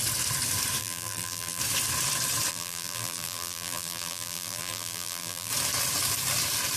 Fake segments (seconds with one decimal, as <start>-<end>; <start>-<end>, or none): 0.8-1.6; 2.5-5.5